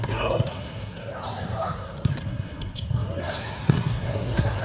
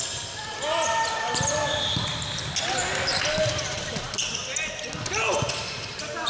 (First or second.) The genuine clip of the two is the second